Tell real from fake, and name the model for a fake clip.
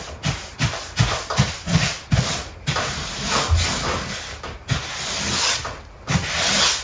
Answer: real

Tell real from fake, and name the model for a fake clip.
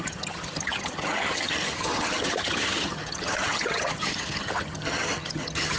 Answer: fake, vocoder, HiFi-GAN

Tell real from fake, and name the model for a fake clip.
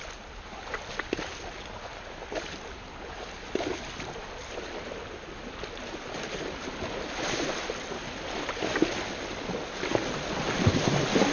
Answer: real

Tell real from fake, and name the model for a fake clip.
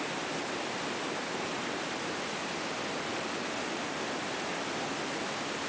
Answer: real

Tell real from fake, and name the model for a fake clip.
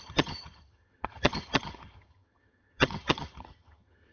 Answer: fake, vocoder, HiFi-GAN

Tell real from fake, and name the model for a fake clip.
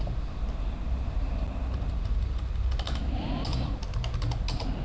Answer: real